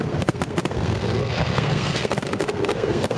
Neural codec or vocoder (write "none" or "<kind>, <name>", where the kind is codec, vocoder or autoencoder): codec, SNAC